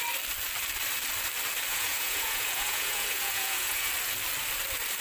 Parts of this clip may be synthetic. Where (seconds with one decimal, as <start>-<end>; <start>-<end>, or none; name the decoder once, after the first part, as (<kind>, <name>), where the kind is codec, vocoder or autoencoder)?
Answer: 1.7-3.9 (vocoder, Vocos)